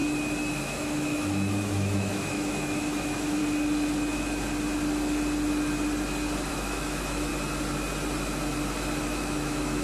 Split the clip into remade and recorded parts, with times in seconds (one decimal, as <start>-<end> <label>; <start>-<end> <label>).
0.0-0.6 recorded; 0.6-3.4 remade; 3.4-6.5 recorded; 6.5-7.3 remade; 7.3-9.0 recorded; 9.0-9.8 remade